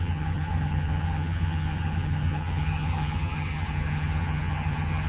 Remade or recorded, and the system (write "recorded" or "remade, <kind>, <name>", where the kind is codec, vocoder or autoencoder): remade, vocoder, HiFi-GAN